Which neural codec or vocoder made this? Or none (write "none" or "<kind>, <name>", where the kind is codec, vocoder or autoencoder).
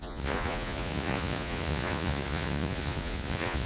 vocoder, Vocos